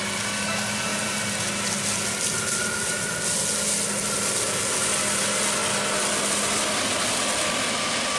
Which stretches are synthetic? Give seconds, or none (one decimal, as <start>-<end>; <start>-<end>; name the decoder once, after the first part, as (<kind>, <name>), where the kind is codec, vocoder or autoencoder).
0.9-1.5 (vocoder, BigVGAN v2)